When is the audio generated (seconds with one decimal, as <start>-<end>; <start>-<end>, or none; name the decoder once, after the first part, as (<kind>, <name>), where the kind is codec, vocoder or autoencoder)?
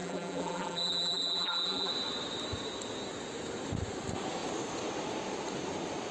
0.0-1.9 (vocoder, BigVGAN v2)